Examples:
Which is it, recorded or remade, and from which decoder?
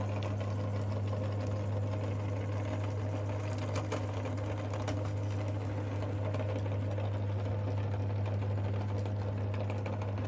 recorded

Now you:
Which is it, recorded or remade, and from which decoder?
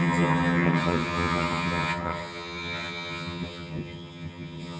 remade, vocoder, HiFi-GAN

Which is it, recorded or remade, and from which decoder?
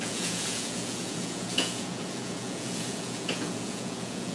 remade, vocoder, Vocos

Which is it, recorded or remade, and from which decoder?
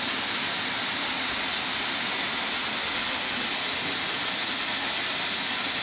recorded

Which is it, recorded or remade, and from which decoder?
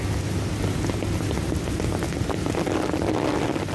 recorded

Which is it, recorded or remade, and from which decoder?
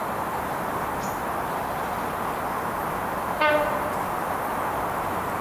recorded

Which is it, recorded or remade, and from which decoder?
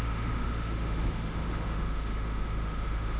remade, autoencoder, DAC-VAE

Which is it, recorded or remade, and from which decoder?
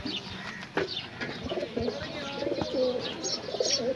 recorded